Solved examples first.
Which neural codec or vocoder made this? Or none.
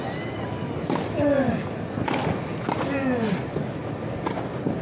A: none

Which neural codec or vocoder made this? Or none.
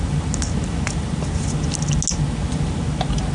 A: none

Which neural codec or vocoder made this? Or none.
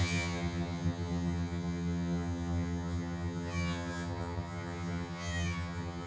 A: vocoder, HiFi-GAN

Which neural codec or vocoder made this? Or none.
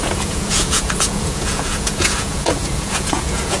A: vocoder, Vocos